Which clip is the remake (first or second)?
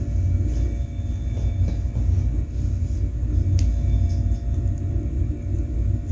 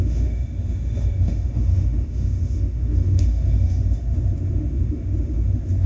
second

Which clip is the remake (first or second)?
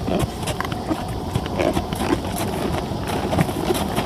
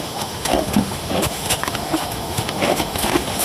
second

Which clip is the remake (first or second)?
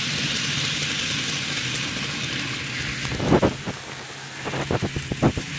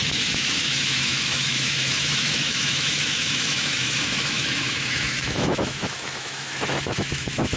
second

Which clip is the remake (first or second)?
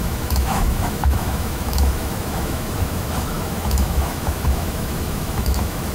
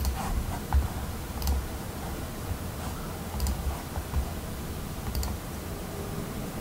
first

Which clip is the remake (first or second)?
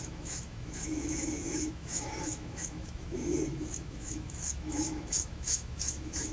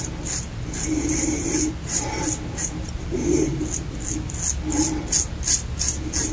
first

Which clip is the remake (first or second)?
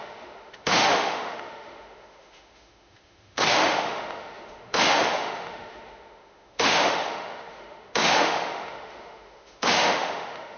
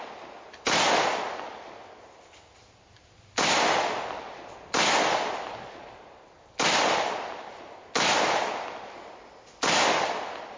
first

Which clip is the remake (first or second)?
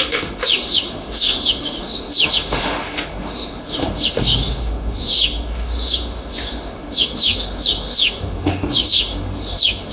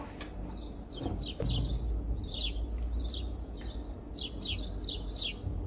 first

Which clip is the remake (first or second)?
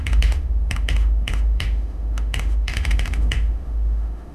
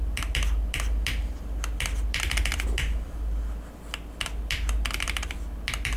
first